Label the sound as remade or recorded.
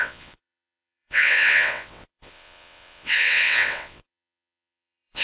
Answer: remade